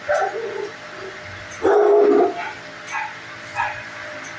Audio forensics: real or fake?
real